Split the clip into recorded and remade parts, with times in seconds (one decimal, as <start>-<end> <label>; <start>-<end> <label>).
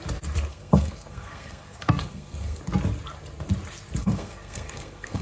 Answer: 0.0-0.5 recorded; 0.5-2.6 remade; 2.6-4.0 recorded; 4.0-5.2 remade